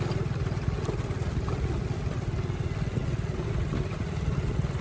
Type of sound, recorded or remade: recorded